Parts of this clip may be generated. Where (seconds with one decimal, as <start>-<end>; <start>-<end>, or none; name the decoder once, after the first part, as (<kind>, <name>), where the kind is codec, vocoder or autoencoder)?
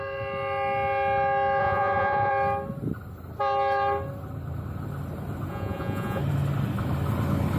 1.6-2.3 (vocoder, Vocos); 5.5-6.2